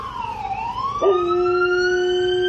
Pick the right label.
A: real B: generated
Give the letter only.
A